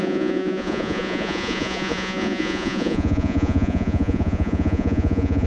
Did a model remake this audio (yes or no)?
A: yes